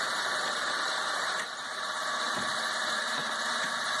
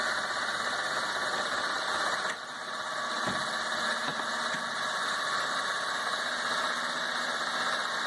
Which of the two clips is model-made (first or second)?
first